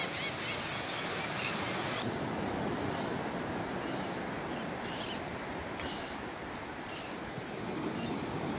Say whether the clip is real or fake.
real